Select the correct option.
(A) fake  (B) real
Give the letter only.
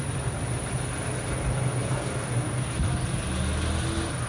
B